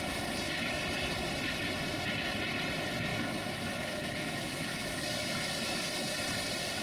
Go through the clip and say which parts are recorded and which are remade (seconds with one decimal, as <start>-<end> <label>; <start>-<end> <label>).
0.0-3.1 recorded; 3.1-5.9 remade; 5.9-6.8 recorded